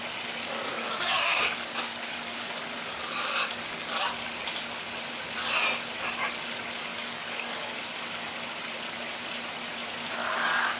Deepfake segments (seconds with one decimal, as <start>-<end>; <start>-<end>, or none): 0.7-4.0; 6.9-7.7; 10.2-10.8